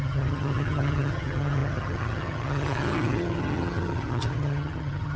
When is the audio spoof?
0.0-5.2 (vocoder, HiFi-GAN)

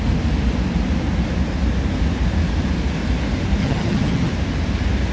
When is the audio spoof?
3.6-4.3 (vocoder, HiFi-GAN)